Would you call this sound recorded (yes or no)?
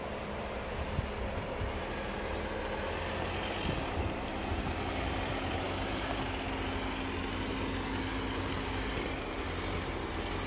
yes